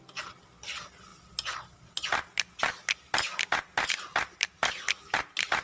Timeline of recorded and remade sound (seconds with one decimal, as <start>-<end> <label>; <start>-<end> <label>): 0.0-5.6 recorded